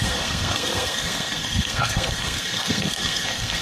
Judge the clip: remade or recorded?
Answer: remade